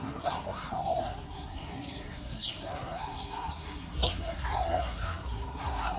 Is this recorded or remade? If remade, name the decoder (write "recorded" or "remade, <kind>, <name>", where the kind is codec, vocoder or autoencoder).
remade, codec, SNAC